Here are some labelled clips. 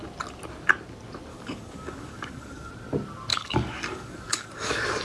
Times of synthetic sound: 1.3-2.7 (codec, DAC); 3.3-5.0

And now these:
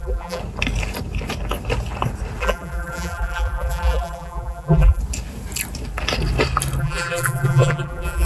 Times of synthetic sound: 0.0-0.4 (vocoder, BigVGAN v2); 2.4-5.0; 6.8-8.3

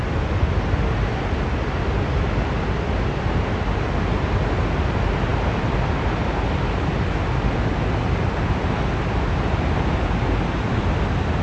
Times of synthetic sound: 5.3-6.2 (vocoder, BigVGAN v2)

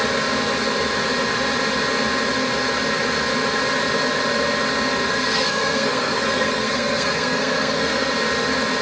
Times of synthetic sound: 5.1-8.1 (codec, SNAC)

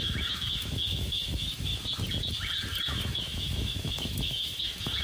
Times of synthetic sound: 0.0-1.7 (autoencoder, DAC-VAE); 2.8-5.0

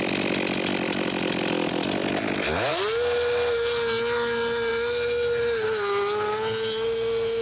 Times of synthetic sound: none